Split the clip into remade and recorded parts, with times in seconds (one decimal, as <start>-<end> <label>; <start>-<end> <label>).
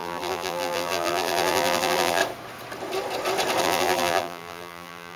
0.0-2.2 remade; 2.2-3.6 recorded; 3.6-5.2 remade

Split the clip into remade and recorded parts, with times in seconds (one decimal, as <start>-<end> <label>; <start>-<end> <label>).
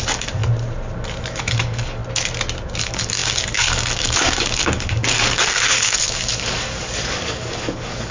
0.0-0.4 remade; 0.4-1.4 recorded; 1.4-2.0 remade; 2.0-2.8 recorded; 2.8-8.1 remade